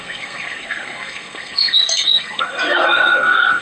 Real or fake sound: fake